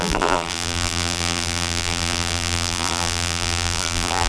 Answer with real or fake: fake